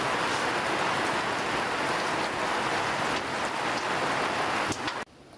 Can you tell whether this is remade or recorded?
recorded